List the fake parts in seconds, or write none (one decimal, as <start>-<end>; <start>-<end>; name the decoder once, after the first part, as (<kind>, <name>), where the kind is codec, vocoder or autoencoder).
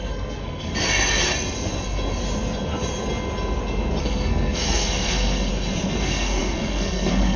0.0-0.7 (codec, SNAC); 4.0-5.5; 6.0-7.4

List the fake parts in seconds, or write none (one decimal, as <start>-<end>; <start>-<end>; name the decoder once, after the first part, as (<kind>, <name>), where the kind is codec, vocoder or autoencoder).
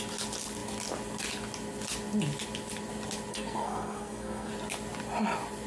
3.3-4.5 (codec, SNAC)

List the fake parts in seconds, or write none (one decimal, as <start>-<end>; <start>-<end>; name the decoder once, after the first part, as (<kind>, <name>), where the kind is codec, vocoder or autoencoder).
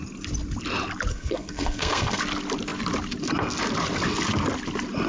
1.1-2.2 (codec, SNAC)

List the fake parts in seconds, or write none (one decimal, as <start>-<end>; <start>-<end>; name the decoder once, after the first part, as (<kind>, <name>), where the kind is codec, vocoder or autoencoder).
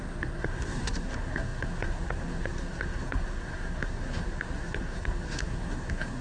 0.0-6.2 (codec, SNAC)